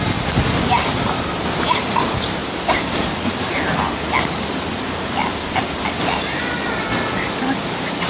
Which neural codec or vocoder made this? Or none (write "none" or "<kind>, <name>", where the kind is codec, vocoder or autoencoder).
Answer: none